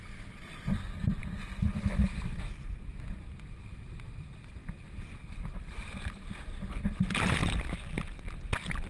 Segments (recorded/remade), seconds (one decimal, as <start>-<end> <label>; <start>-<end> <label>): 0.0-7.4 recorded; 7.4-8.0 remade; 8.0-8.9 recorded